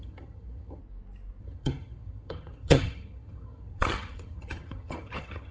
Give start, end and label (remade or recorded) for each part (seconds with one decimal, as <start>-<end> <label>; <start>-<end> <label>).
0.0-0.8 remade; 0.8-1.4 recorded; 1.4-5.5 remade